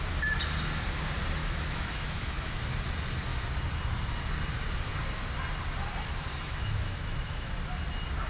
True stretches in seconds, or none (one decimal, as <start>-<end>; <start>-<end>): 0.0-1.4; 2.6-6.3; 7.5-8.3